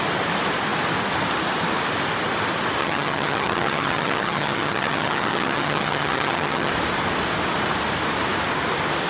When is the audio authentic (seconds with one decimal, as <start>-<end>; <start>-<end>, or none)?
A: 0.0-2.8; 6.7-9.1

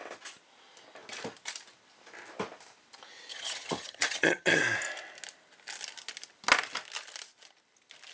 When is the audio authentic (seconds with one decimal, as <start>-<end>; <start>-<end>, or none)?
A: 0.0-3.3; 4.6-8.1